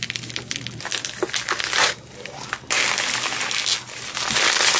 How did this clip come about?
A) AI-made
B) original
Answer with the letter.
B